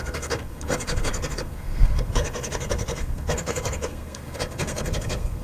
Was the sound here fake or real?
fake